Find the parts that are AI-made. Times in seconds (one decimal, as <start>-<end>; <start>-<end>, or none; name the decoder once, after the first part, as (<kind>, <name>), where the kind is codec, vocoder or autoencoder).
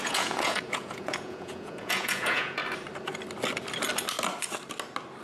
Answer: 0.0-2.6 (vocoder, Vocos)